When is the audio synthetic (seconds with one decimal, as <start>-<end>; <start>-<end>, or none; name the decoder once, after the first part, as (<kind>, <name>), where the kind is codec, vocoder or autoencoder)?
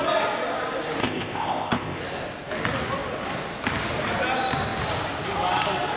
1.0-2.0 (codec, ZipCodec)